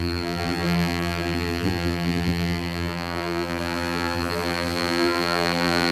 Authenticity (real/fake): fake